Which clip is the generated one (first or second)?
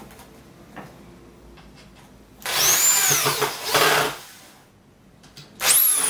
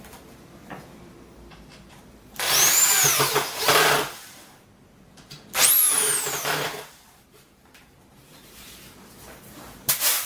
second